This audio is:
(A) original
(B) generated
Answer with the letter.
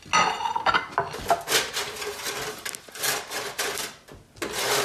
A